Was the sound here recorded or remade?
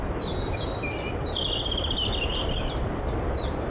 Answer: remade